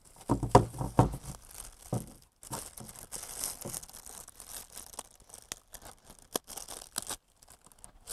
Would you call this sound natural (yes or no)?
yes